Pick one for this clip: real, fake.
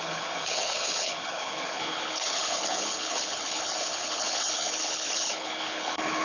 fake